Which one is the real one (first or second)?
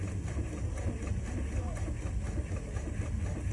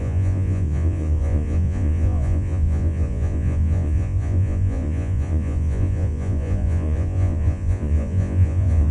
first